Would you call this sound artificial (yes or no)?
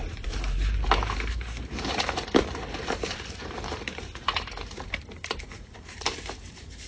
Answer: yes